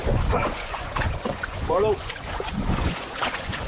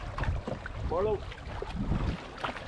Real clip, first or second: second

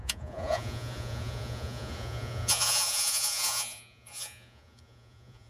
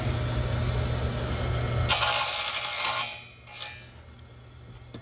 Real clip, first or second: second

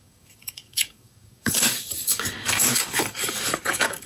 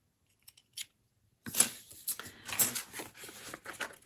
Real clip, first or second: second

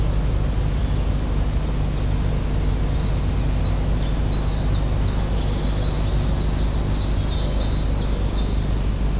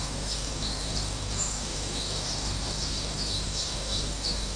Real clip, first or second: first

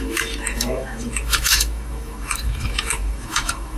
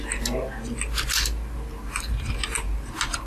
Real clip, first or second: second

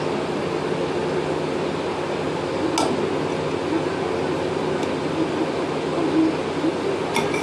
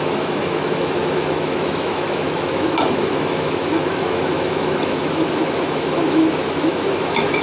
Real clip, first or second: first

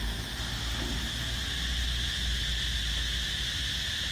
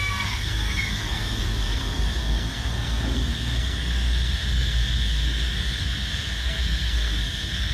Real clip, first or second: first